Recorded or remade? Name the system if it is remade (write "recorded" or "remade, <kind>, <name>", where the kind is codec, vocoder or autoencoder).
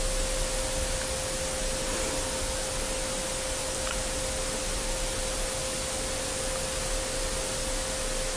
recorded